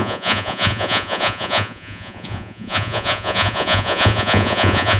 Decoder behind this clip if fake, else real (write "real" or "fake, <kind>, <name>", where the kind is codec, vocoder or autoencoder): fake, vocoder, Vocos